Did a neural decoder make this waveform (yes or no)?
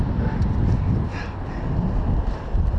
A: no